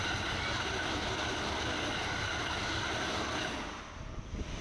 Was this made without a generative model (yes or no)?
yes